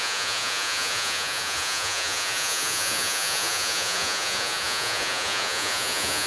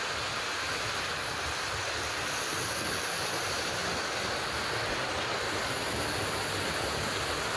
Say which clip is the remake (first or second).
first